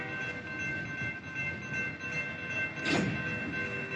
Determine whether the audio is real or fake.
real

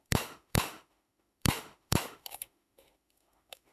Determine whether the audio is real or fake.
fake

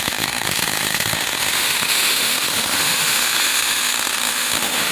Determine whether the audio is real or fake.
fake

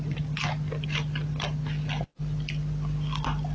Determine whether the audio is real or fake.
real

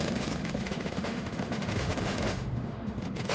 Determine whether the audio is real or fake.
fake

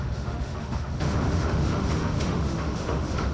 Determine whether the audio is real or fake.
fake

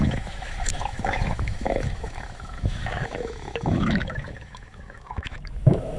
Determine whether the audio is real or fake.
fake